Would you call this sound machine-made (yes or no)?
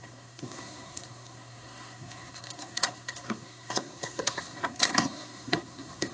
yes